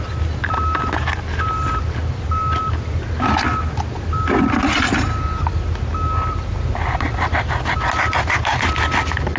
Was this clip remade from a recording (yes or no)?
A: no